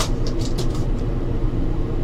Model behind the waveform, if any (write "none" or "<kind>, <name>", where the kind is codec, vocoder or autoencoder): vocoder, BigVGAN v2